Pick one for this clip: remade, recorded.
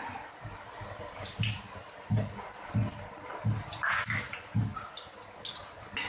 recorded